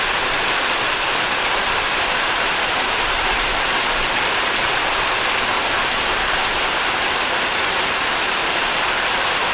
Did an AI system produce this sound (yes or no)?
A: no